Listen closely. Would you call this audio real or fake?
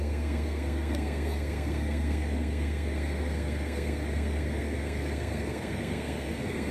fake